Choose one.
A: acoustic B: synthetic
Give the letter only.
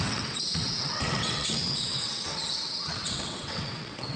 B